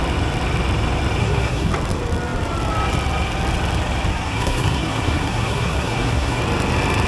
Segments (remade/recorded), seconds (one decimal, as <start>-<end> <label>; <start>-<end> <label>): 0.0-1.2 recorded; 1.2-1.7 remade; 1.7-4.1 recorded; 4.1-6.4 remade; 6.4-7.1 recorded